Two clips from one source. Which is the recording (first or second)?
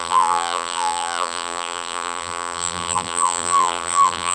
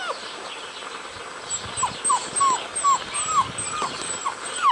second